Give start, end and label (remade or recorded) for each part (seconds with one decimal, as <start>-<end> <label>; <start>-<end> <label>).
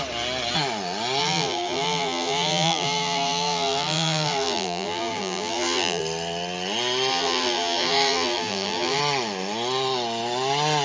0.0-1.2 recorded; 1.2-6.0 remade; 6.0-7.1 recorded; 7.1-9.0 remade; 9.0-10.8 recorded